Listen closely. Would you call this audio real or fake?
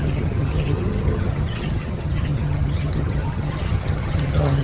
fake